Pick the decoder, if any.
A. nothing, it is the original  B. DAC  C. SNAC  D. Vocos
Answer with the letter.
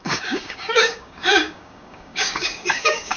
B